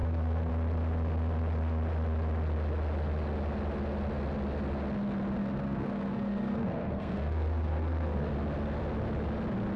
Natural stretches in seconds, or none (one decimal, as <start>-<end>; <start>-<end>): 0.5-5.4; 8.3-9.8